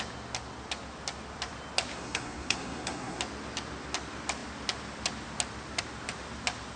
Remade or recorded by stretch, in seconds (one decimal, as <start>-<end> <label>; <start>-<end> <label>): 0.0-1.9 recorded; 1.9-3.2 remade; 3.2-6.8 recorded